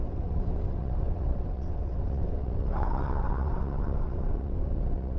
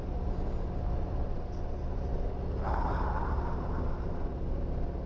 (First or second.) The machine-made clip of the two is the first